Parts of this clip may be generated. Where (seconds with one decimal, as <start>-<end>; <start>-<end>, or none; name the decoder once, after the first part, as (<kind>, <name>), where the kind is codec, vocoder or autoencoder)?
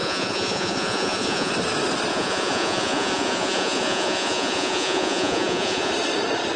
0.0-1.5 (vocoder, Vocos); 2.1-5.9